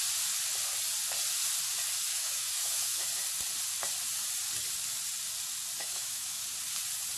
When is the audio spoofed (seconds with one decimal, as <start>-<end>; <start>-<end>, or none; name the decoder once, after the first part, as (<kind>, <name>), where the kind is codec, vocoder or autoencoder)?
2.1-3.0 (autoencoder, DAC-VAE); 5.8-6.4